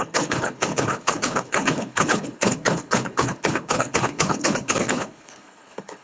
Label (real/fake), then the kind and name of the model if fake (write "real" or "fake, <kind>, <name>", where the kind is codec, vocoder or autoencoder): fake, codec, HILCodec